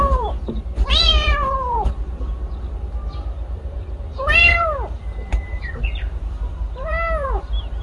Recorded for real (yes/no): no